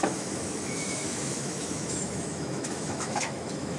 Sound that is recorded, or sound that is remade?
remade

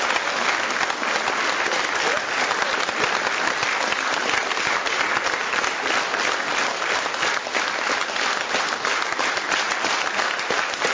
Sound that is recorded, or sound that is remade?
recorded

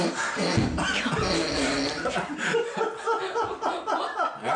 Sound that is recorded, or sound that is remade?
recorded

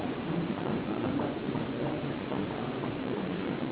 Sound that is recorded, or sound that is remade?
remade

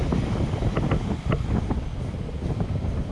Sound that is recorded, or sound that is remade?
recorded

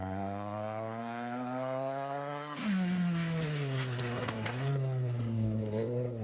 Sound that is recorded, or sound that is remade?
remade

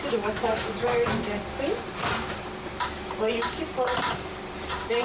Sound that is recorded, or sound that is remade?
remade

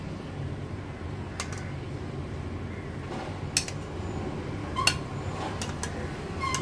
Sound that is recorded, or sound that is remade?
recorded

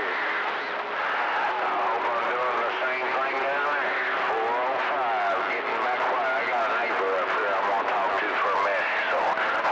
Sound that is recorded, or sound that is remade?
recorded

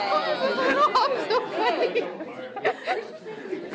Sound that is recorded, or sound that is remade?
recorded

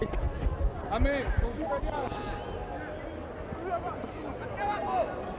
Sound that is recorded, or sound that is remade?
recorded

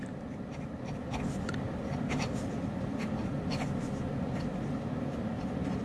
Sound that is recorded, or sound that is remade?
recorded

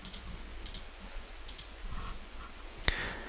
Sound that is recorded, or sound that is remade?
remade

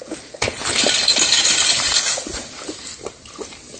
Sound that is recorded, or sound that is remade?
recorded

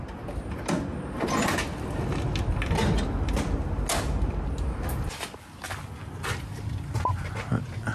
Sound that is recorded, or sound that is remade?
recorded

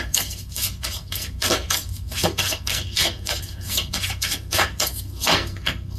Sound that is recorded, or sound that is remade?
remade